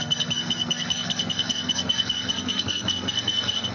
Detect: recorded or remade remade